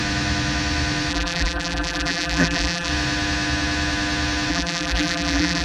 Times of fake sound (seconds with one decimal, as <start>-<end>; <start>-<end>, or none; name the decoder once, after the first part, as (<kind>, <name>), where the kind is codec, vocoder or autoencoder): 1.1-2.9 (vocoder, BigVGAN v2); 4.5-5.6